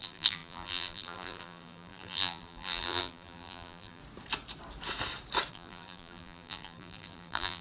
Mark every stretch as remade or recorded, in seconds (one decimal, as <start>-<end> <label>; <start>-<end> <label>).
0.0-4.0 remade; 4.0-5.5 recorded; 5.5-7.6 remade

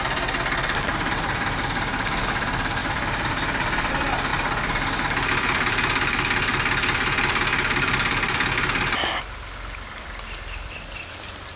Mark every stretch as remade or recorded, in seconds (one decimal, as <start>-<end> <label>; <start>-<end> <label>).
0.0-4.3 remade; 4.3-5.3 recorded; 5.3-11.6 remade

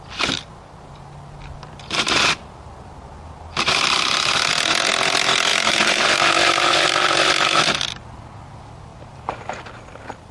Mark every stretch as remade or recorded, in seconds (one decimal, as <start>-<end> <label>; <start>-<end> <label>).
0.0-5.5 recorded; 5.5-6.0 remade; 6.0-8.9 recorded; 8.9-9.4 remade; 9.4-10.3 recorded

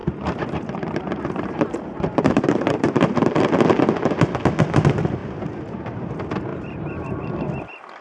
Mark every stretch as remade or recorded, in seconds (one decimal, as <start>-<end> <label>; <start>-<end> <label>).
0.0-3.5 remade; 3.5-5.2 recorded; 5.2-6.1 remade; 6.1-6.5 recorded; 6.5-7.0 remade; 7.0-8.0 recorded